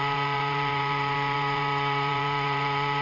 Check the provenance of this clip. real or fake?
fake